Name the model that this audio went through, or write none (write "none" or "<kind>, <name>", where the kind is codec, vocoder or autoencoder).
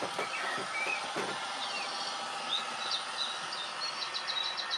none